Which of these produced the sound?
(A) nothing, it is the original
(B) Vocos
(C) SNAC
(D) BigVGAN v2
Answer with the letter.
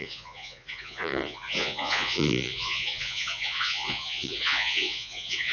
B